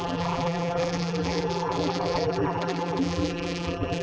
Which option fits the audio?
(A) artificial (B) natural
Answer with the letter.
A